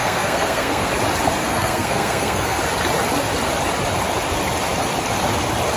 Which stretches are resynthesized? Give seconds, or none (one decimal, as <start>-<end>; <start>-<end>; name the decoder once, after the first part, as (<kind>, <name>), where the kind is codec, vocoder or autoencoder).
0.0-0.9 (codec, SNAC); 1.4-2.6